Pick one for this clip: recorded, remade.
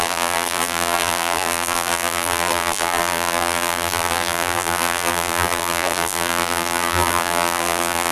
remade